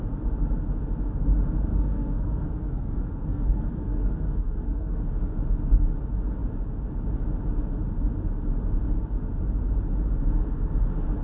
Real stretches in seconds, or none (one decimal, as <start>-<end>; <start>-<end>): 0.0-1.7; 5.0-11.2